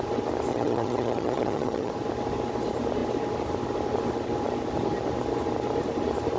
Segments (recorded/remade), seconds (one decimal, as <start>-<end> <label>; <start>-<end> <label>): 0.0-0.5 recorded; 0.5-1.9 remade; 1.9-6.4 recorded